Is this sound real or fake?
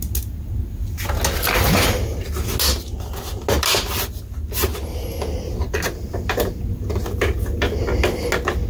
real